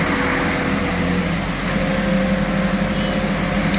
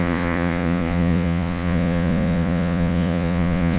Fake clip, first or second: second